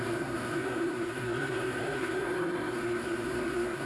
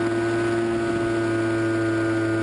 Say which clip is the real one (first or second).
second